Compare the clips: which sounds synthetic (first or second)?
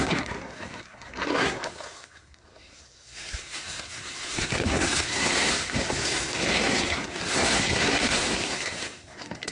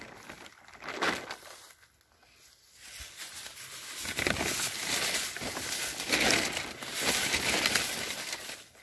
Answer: first